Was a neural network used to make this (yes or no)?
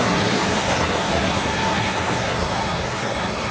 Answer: yes